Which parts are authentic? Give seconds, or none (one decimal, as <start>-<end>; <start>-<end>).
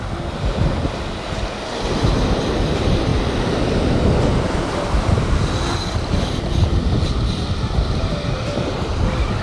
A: 0.0-9.4